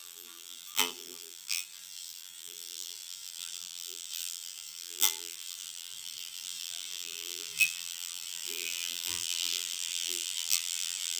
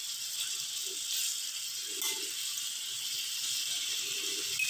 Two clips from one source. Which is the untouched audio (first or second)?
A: second